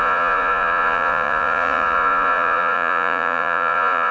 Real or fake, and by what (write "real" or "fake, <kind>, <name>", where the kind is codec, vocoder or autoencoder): fake, vocoder, Vocos